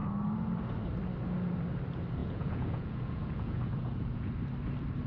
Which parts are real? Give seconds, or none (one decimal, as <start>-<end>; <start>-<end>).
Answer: 0.0-2.2; 4.3-5.1